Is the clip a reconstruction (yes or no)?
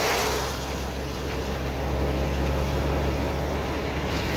no